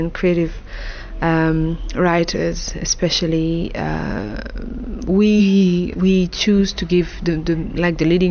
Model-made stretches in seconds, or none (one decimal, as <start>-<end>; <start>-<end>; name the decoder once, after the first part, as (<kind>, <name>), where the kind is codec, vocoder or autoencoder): 5.4-6.0 (codec, ZipCodec)